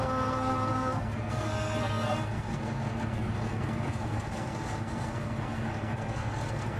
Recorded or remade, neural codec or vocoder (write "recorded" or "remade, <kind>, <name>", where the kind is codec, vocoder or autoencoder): remade, codec, SNAC